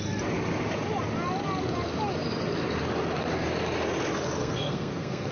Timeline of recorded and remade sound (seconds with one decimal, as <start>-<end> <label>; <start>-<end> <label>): 0.0-4.4 recorded; 4.4-5.3 remade